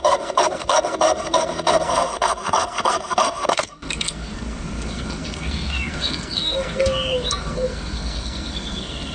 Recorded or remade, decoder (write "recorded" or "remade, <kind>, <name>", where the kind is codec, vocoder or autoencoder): remade, codec, SNAC